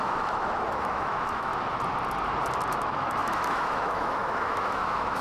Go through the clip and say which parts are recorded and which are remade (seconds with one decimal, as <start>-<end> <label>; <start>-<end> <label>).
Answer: 0.0-1.5 remade; 1.5-2.7 recorded; 2.7-5.2 remade